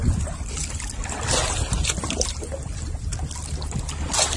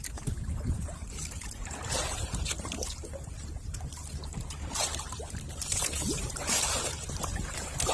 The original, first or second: first